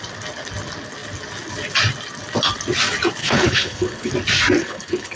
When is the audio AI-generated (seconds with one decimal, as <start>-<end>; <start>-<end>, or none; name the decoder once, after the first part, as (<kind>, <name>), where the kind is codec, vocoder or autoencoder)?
3.2-4.1 (codec, HILCodec); 4.6-5.2